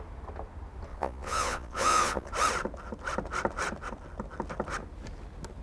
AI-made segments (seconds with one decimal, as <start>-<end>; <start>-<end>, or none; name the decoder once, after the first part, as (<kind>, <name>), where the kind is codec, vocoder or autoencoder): 0.9-2.3 (vocoder, Vocos)

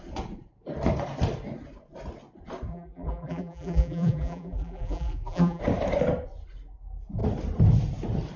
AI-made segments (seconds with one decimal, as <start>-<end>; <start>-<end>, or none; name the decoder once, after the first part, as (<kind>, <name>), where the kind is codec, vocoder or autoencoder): 2.7-5.6 (vocoder, BigVGAN v2)

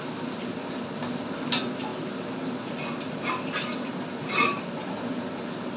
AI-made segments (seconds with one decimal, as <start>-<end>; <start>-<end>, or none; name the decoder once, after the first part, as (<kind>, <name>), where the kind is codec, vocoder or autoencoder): none

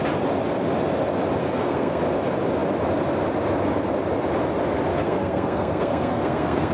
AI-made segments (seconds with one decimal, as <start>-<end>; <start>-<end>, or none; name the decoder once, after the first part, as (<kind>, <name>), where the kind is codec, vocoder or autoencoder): 1.4-2.0 (codec, SNAC); 4.9-6.7